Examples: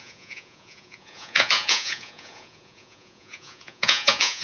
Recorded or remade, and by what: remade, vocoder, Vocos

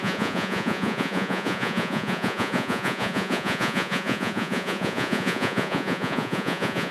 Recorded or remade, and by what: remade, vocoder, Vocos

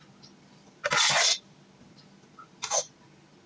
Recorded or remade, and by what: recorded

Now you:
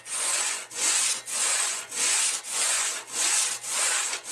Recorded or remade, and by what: remade, vocoder, Vocos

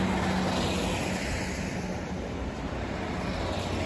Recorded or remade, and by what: recorded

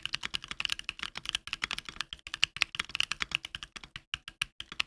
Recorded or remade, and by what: recorded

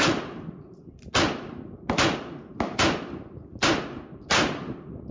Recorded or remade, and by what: recorded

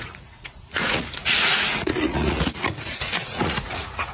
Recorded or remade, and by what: remade, vocoder, Vocos